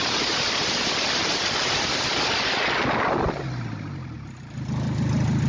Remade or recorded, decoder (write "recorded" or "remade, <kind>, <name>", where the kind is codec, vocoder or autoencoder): recorded